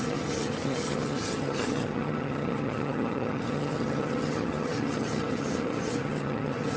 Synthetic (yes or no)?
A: yes